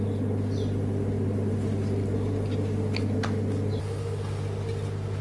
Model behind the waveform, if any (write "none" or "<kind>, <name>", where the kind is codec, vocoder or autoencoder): none